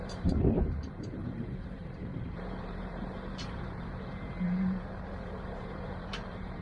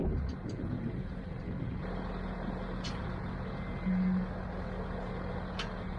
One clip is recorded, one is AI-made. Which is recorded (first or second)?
second